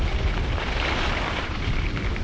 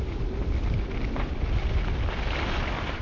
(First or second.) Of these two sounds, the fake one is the first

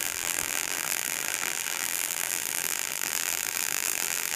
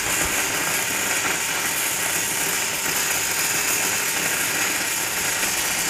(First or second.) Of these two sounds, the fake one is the first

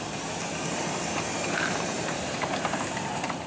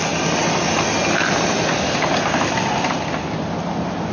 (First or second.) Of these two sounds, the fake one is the first